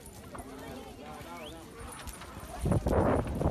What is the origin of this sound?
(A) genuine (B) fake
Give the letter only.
A